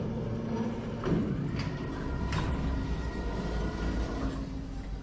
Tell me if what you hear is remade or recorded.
recorded